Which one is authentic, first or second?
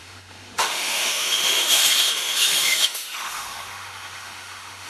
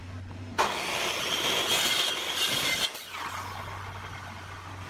second